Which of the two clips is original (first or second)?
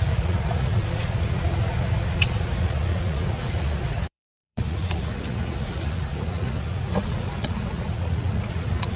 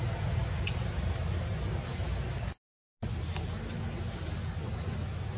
second